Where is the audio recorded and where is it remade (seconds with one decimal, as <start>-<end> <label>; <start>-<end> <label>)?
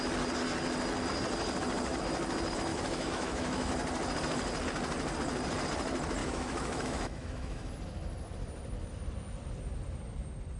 0.0-2.7 recorded; 2.7-3.7 remade; 3.7-6.2 recorded; 6.2-7.7 remade; 7.7-10.6 recorded